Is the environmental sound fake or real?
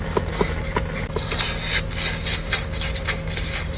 real